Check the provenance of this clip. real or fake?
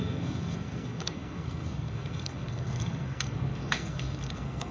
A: fake